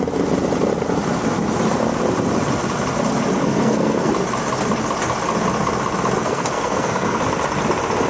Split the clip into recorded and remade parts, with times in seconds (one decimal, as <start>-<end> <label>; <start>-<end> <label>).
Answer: 0.0-3.4 recorded; 3.4-4.1 remade; 4.1-6.2 recorded; 6.2-7.2 remade; 7.2-8.1 recorded